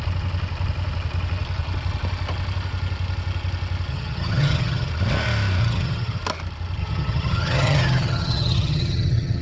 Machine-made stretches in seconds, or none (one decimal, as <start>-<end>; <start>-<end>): 3.9-4.9; 5.6-6.2; 6.8-9.4